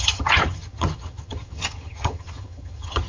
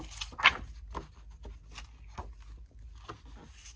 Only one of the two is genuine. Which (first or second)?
second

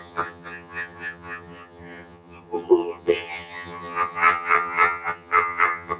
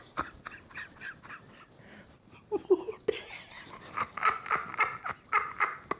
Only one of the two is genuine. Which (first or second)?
second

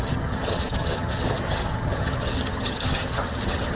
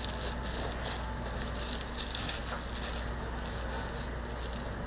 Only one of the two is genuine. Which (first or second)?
second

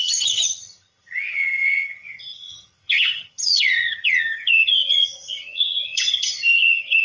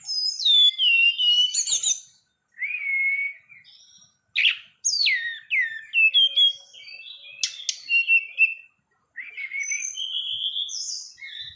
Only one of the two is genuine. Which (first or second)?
second